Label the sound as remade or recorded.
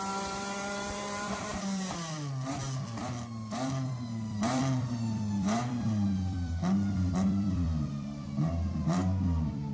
remade